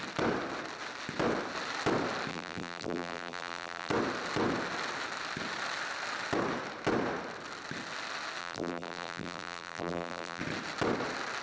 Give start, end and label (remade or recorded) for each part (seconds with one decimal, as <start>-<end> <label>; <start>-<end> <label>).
0.0-2.3 recorded; 2.3-3.9 remade; 3.9-8.4 recorded; 8.4-10.4 remade; 10.4-11.4 recorded